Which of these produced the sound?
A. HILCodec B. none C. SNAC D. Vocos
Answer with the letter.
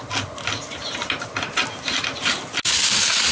B